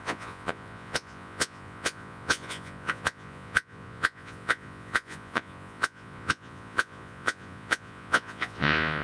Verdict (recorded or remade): remade